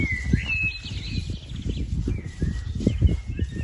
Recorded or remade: recorded